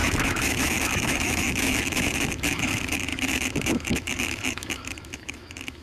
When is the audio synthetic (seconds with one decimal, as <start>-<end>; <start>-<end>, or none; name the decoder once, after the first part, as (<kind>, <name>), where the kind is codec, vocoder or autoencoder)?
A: 0.0-5.8 (autoencoder, DAC-VAE)